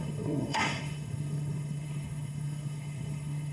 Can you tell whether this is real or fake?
fake